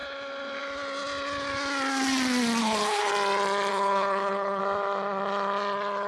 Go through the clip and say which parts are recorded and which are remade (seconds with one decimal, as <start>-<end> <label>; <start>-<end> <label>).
0.0-2.6 recorded; 2.6-3.1 remade; 3.1-3.7 recorded; 3.7-4.6 remade; 4.6-6.1 recorded